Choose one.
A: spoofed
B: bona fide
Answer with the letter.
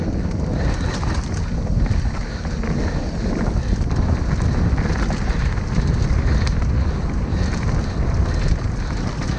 B